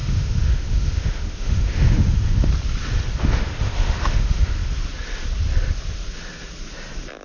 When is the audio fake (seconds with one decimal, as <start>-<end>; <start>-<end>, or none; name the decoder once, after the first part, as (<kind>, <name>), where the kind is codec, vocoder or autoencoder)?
0.0-2.5 (autoencoder, DAC-VAE); 3.1-4.7